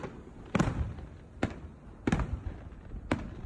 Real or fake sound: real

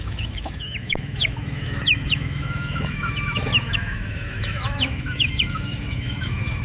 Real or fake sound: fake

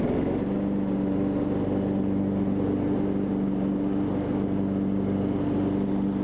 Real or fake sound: real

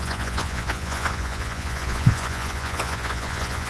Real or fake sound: fake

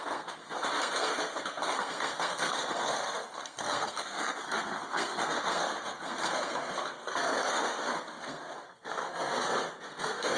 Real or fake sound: fake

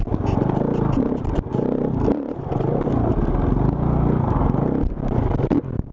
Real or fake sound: real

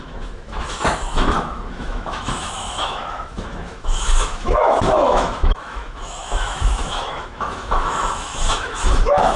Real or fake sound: fake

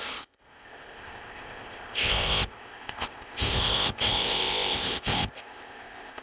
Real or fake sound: fake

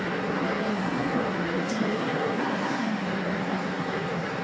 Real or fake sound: fake